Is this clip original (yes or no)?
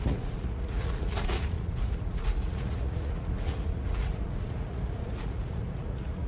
no